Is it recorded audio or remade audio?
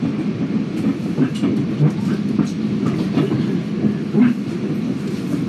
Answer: recorded